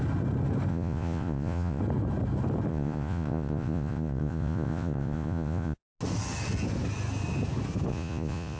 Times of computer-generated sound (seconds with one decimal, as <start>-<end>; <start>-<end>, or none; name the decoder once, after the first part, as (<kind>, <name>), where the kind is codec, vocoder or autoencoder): 0.7-1.8 (vocoder, Vocos); 2.7-5.8; 7.9-8.6